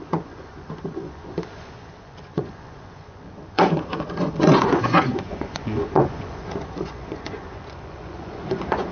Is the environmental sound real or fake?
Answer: fake